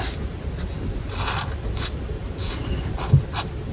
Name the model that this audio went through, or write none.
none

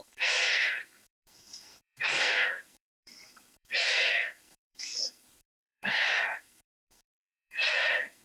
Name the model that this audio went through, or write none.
codec, SNAC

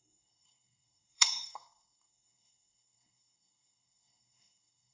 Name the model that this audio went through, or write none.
codec, SNAC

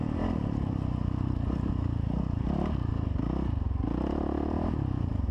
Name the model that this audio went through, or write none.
none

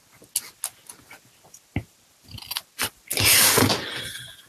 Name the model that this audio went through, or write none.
none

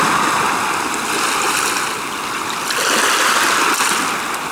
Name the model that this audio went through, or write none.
none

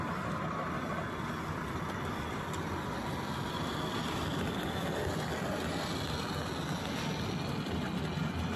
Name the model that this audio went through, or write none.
none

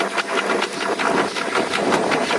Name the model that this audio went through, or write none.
none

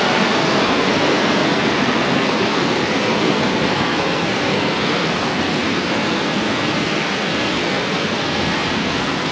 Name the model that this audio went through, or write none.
codec, SNAC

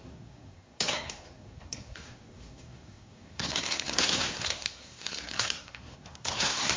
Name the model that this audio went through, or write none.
codec, SNAC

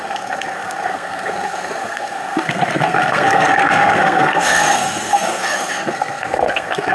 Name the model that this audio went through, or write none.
codec, SNAC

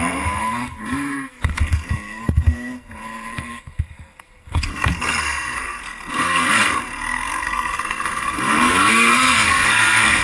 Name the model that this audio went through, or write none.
codec, SNAC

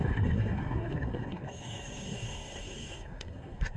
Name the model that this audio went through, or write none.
codec, SNAC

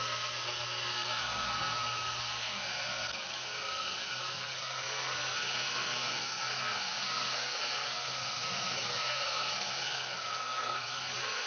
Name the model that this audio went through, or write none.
codec, SNAC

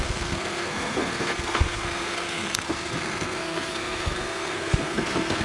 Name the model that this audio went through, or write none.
codec, SNAC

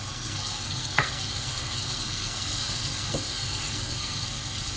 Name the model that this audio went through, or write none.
codec, SNAC